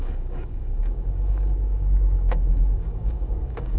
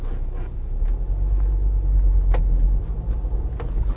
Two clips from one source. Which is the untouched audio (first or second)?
second